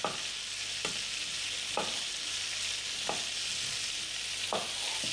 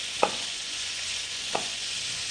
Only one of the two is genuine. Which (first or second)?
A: first